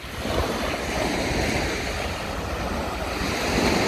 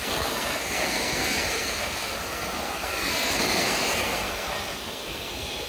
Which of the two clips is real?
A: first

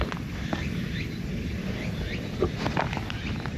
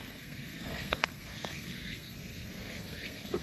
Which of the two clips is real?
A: first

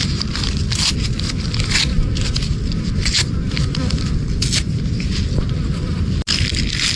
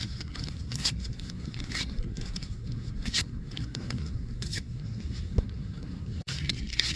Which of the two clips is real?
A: first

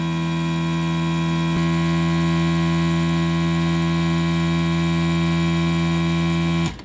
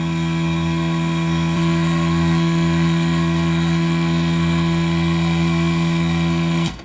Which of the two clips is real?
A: first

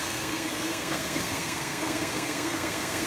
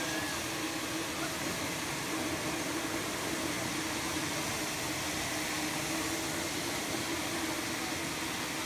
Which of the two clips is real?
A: second